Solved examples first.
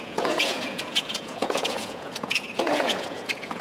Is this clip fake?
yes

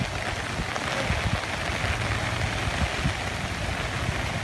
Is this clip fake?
no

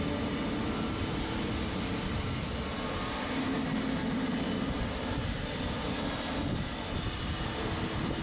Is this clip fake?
no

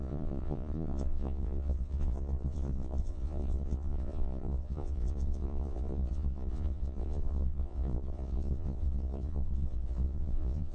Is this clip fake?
yes